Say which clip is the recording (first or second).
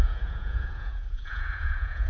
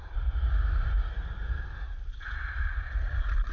second